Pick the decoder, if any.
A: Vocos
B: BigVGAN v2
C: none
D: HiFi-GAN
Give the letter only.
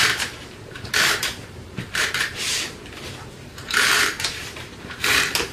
B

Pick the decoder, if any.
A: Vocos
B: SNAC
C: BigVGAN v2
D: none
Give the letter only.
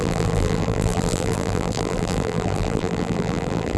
C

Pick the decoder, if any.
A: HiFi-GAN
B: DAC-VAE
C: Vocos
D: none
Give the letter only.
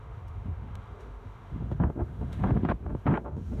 B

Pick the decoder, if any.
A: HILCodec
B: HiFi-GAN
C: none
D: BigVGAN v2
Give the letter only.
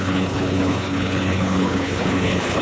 A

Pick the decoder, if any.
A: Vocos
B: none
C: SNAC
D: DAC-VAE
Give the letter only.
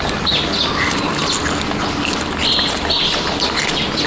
B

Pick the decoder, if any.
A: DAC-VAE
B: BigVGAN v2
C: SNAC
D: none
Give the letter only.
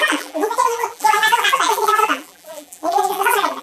B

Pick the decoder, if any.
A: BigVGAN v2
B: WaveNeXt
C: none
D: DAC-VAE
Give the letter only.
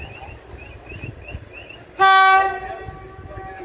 C